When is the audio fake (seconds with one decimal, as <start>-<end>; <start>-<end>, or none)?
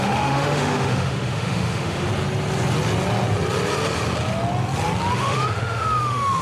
0.0-2.1; 5.1-6.4